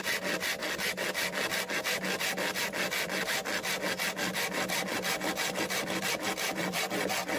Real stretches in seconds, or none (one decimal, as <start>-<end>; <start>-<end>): 0.0-7.4